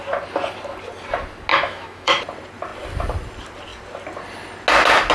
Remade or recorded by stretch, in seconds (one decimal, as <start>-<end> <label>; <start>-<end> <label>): 0.0-1.5 recorded; 1.5-2.2 remade; 2.2-5.1 recorded